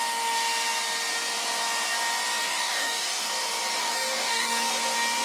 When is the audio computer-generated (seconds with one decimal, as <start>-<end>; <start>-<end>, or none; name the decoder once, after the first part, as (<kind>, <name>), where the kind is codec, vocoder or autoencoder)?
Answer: 2.4-3.3 (codec, DAC); 3.8-4.7